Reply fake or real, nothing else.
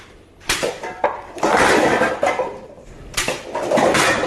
fake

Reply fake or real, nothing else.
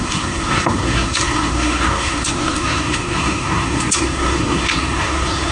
fake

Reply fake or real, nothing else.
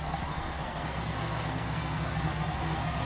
fake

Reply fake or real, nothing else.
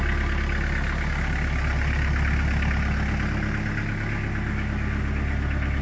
real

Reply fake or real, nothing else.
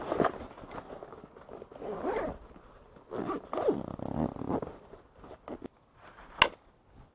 real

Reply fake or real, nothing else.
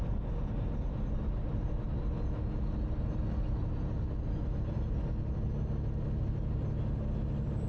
real